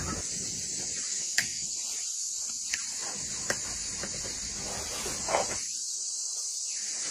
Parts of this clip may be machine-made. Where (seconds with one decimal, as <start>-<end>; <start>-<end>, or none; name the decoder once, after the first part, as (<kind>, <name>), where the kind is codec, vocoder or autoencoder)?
1.1-1.7 (codec, SNAC)